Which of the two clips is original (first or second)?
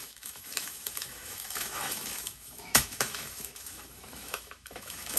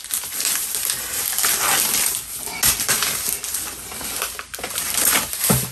second